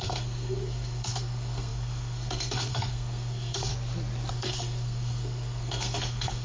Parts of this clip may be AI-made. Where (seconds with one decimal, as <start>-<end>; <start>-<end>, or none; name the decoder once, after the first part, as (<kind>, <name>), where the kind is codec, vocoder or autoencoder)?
0.0-3.7 (codec, SNAC); 4.3-6.4